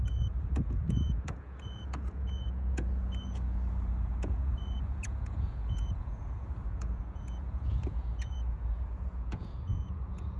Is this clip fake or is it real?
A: fake